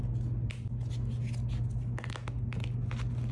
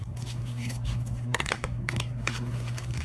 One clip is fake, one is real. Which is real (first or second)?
first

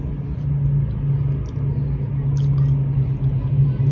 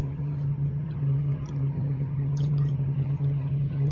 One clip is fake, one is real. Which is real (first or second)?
first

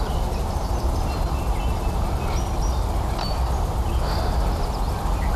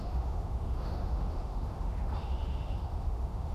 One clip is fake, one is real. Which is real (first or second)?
first